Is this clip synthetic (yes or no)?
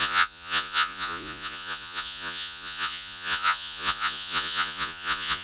yes